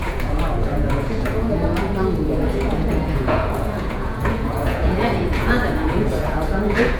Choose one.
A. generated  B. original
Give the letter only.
A